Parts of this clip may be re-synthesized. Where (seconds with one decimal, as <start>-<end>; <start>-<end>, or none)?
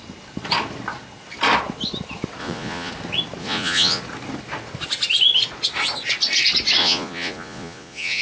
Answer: 2.4-2.9; 3.4-4.0; 6.8-8.2